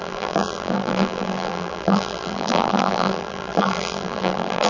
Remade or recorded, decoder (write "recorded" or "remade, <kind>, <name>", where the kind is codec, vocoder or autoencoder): remade, vocoder, BigVGAN v2